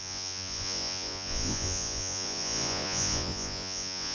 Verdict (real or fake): fake